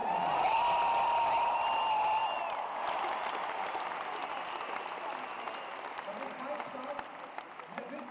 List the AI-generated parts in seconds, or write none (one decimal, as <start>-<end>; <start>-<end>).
0.0-0.6